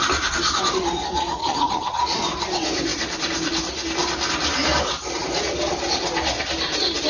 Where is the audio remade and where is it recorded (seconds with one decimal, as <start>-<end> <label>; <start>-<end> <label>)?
0.0-1.4 recorded; 1.4-2.0 remade; 2.0-7.1 recorded